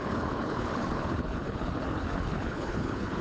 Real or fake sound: fake